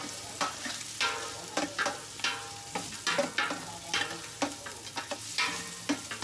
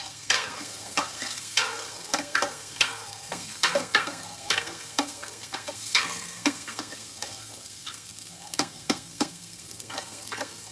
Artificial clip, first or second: second